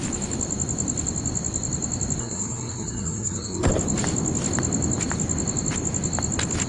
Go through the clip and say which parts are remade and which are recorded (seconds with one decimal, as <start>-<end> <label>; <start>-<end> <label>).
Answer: 0.0-2.2 recorded; 2.2-3.7 remade; 3.7-6.7 recorded